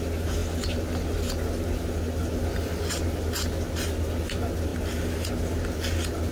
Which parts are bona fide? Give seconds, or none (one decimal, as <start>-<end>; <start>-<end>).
0.0-6.3